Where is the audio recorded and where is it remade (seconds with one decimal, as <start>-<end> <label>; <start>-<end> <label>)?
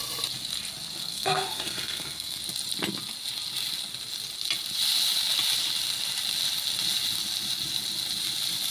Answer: 0.0-1.0 recorded; 1.0-2.4 remade; 2.4-8.7 recorded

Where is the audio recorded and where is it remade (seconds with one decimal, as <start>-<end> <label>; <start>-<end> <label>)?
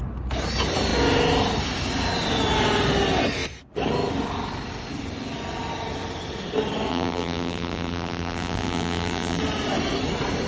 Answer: 0.0-6.9 recorded; 6.9-9.4 remade; 9.4-10.5 recorded